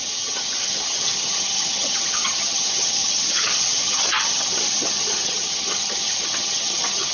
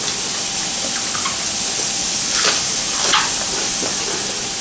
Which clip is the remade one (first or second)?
first